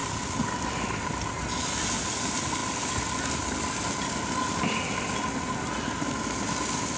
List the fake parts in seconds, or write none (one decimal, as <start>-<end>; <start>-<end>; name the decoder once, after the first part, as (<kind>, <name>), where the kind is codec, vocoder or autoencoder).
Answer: none